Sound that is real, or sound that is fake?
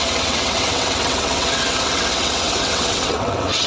fake